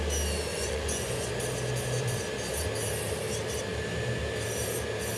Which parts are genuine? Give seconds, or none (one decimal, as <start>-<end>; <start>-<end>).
0.0-0.5; 1.3-5.2